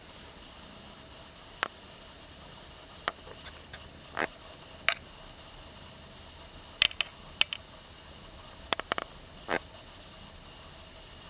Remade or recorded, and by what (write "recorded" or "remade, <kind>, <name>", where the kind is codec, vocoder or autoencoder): recorded